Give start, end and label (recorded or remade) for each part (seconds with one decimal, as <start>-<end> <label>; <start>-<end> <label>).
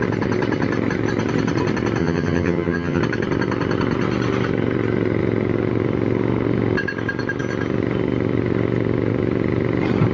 0.0-2.0 recorded; 2.0-3.0 remade; 3.0-10.1 recorded